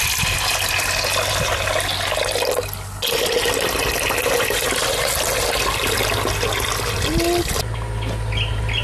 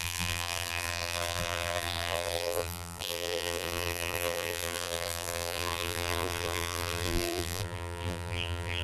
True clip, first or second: first